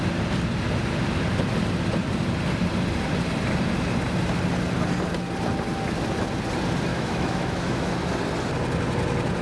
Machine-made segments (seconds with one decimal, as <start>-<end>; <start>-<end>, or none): 6.9-7.9